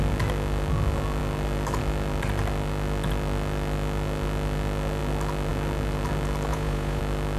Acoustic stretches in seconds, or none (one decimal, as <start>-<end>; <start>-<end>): 0.0-6.5; 7.0-7.4